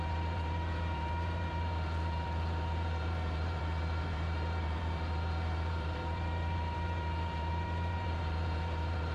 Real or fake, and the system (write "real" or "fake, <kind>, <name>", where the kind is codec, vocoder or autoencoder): fake, vocoder, BigVGAN v2